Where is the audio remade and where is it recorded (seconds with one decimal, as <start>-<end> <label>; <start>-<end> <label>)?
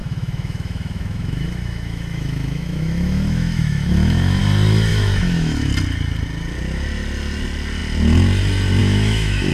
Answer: 0.0-4.4 remade; 4.4-4.9 recorded; 4.9-5.7 remade; 5.7-8.8 recorded; 8.8-9.5 remade